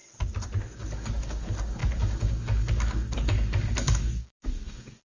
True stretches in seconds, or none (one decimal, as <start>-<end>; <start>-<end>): 0.0-0.6

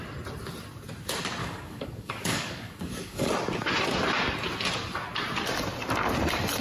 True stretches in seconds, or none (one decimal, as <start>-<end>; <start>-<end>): 0.0-1.4; 3.3-6.6

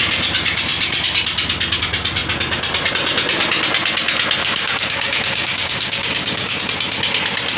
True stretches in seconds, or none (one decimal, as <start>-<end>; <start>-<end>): 0.0-4.4; 6.6-7.6

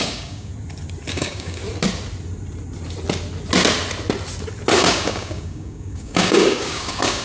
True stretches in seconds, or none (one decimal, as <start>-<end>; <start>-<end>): 0.5-1.1; 1.6-4.8

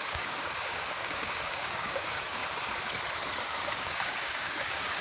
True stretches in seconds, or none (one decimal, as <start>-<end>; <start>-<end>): 2.4-3.4

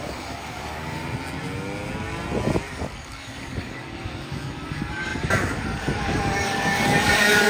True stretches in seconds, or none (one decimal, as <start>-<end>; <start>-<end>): 1.0-2.7

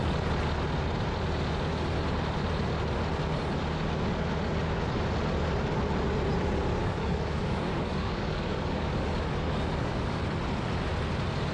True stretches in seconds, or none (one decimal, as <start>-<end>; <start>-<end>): 0.0-6.8; 10.2-11.5

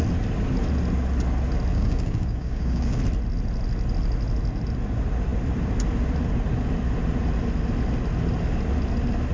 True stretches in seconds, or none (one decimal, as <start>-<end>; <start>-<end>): 0.0-1.7; 3.0-9.3